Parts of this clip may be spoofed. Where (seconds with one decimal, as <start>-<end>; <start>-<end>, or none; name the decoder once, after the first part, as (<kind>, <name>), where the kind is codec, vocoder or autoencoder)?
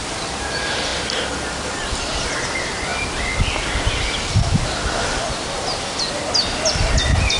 none